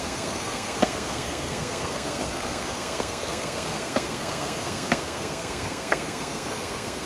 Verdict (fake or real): fake